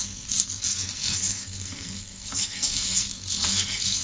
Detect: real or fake fake